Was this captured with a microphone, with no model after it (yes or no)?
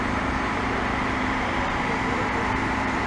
no